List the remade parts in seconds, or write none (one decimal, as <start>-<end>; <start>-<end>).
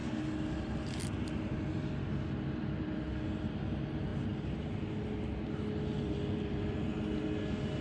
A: none